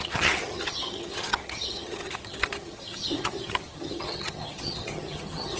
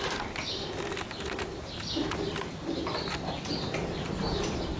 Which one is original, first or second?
second